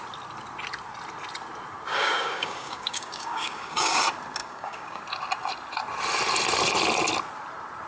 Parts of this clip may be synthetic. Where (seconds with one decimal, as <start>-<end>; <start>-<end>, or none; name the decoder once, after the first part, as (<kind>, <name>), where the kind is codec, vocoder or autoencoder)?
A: 1.9-4.0 (codec, DAC); 4.4-5.0